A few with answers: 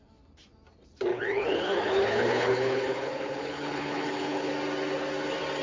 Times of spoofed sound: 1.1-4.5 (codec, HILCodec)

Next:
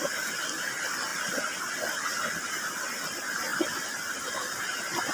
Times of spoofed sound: none

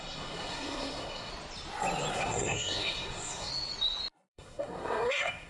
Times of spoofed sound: 0.0-1.3 (codec, SNAC); 2.1-3.5; 4.3-5.5

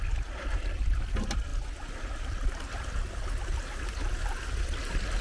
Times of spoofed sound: none